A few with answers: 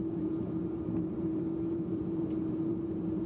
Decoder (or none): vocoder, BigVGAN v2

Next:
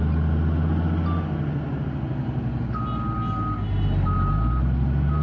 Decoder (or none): none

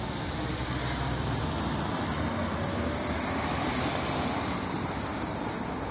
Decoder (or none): vocoder, BigVGAN v2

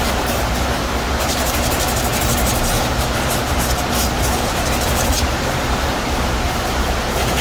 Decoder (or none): vocoder, BigVGAN v2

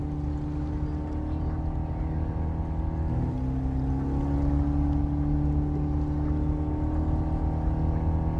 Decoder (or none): none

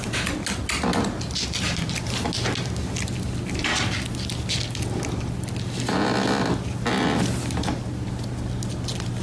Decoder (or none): none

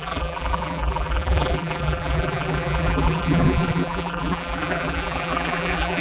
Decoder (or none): vocoder, BigVGAN v2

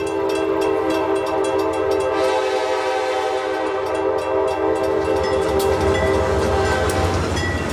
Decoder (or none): none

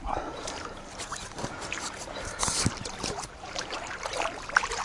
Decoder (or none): vocoder, BigVGAN v2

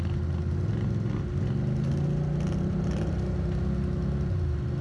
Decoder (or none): none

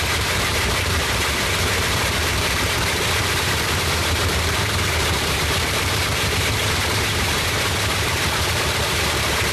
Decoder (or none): vocoder, BigVGAN v2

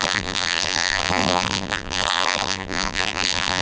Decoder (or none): vocoder, BigVGAN v2